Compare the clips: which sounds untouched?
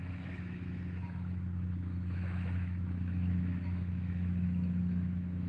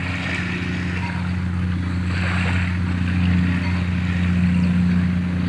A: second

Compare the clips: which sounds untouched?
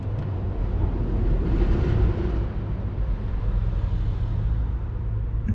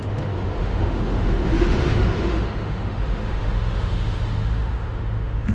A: first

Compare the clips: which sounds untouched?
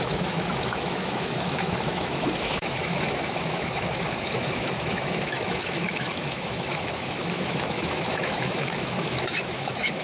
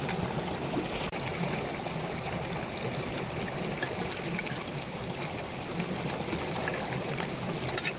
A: second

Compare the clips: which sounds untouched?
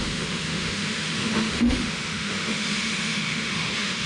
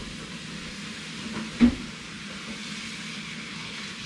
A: second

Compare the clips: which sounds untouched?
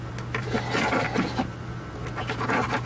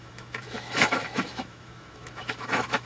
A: first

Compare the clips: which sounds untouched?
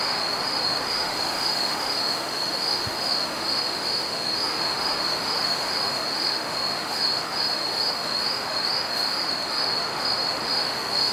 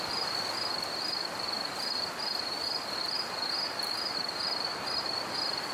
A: second